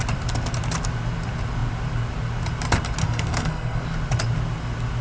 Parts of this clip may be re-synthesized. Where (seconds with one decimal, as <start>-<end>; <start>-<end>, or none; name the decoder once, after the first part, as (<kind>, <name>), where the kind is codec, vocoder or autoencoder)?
3.0-3.8 (codec, SNAC)